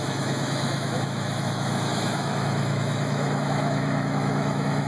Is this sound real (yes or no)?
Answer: no